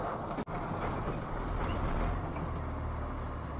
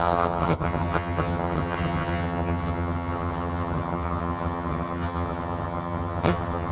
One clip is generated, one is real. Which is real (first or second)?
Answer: first